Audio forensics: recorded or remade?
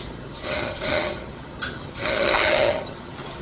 remade